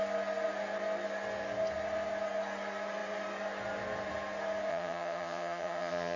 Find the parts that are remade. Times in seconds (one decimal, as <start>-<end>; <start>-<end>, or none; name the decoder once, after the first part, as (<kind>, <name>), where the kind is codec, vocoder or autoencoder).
4.7-6.2 (vocoder, HiFi-GAN)